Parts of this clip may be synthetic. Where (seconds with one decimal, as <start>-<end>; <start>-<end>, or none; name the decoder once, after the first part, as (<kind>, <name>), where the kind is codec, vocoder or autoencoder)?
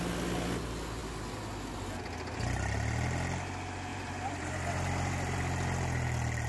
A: 3.9-5.4 (vocoder, BigVGAN v2)